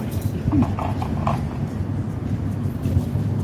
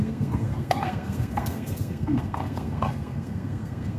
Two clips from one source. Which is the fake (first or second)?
second